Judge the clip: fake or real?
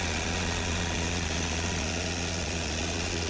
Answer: fake